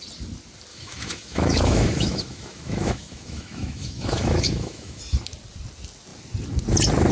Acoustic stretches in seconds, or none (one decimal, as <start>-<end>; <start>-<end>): 0.0-0.7; 5.0-7.1